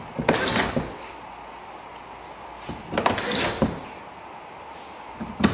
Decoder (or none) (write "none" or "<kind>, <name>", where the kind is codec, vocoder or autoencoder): none